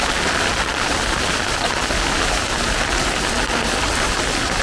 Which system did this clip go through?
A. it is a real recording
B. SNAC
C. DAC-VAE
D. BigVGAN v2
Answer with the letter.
A